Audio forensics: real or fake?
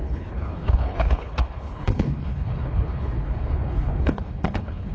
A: fake